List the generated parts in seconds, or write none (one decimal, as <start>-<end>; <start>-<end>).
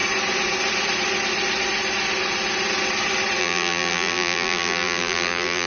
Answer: 3.4-5.7